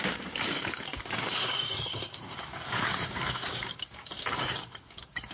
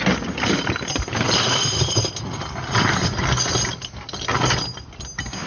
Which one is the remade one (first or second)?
first